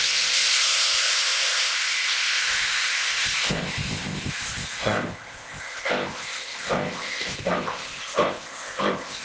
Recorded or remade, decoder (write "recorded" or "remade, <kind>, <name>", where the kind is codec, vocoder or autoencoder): remade, codec, ZipCodec